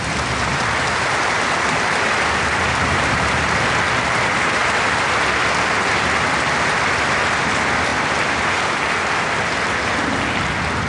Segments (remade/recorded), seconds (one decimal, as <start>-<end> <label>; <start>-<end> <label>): 0.0-0.5 recorded; 0.5-1.4 remade; 1.4-10.9 recorded